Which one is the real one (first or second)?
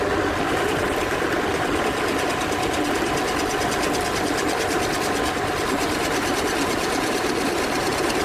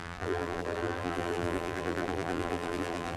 first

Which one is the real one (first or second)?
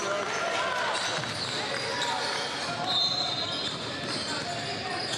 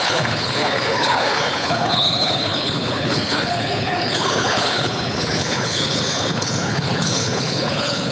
first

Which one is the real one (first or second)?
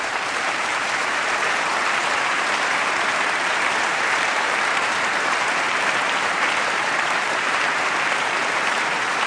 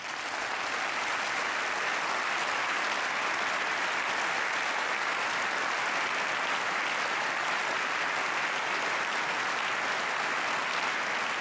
second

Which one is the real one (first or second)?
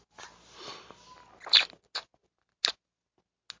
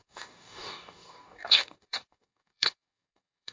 first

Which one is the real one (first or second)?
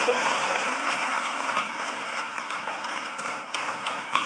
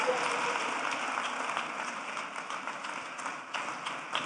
second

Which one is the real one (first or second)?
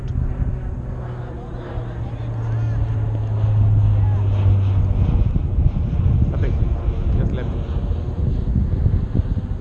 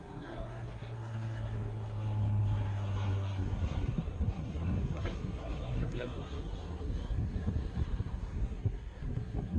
first